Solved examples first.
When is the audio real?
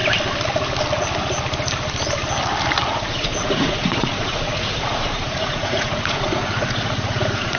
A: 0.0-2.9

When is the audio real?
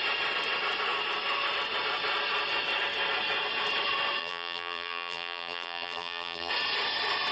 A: 0.0-4.2; 6.5-7.3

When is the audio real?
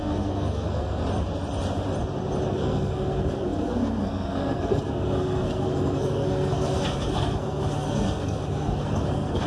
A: 1.0-2.5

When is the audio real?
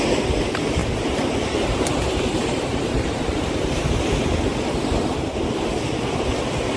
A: 0.0-0.8; 4.0-4.5; 6.0-6.8